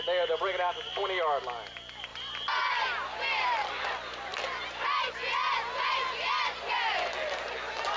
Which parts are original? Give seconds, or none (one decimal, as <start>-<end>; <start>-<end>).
0.0-8.0